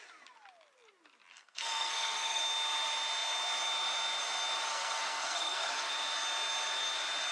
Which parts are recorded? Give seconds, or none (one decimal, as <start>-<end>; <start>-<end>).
0.0-1.3; 2.4-4.7; 5.9-7.3